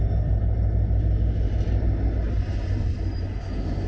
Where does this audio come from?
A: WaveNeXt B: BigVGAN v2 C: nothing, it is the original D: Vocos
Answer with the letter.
C